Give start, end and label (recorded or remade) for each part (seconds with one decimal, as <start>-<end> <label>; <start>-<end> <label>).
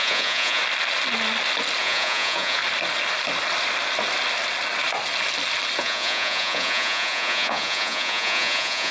0.0-0.6 remade; 0.6-1.8 recorded; 1.8-2.6 remade; 2.6-5.8 recorded; 5.8-8.9 remade